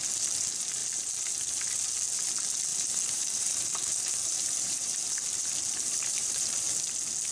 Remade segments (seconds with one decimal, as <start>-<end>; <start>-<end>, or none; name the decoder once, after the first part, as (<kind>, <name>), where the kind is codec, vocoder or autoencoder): 2.7-6.8 (vocoder, BigVGAN v2)